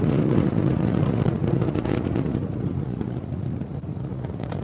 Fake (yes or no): yes